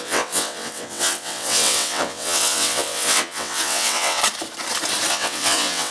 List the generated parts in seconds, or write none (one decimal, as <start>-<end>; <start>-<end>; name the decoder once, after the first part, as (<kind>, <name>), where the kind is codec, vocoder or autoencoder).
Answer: 0.0-4.2 (vocoder, WaveNeXt); 5.1-5.9